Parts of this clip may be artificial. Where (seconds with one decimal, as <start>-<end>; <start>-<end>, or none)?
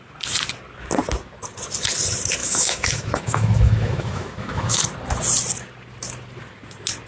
2.4-4.8